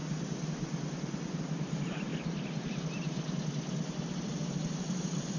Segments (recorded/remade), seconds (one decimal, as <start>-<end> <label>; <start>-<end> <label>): 0.0-1.4 recorded; 1.4-2.1 remade; 2.1-4.7 recorded; 4.7-5.4 remade